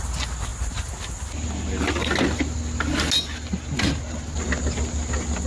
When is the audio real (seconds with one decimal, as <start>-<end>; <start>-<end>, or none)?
0.0-5.5